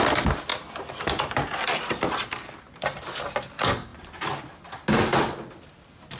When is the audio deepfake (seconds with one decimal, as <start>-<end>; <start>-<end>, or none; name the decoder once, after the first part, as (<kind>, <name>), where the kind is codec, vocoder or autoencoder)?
0.5-3.5 (vocoder, BigVGAN v2)